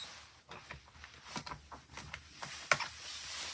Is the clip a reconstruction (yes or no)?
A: no